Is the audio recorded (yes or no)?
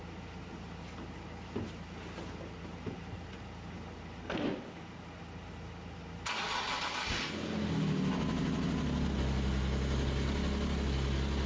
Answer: yes